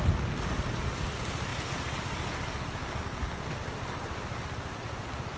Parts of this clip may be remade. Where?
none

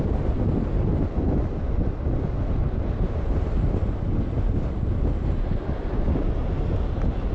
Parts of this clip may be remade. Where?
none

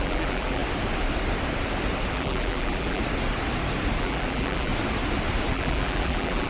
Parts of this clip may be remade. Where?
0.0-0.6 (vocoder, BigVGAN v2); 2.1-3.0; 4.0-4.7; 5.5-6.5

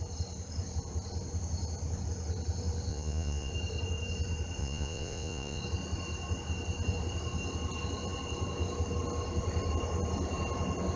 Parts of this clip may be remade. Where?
2.9-3.5 (vocoder, Vocos); 4.6-5.6